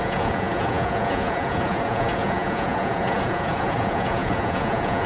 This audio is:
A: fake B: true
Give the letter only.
A